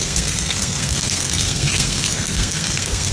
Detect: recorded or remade remade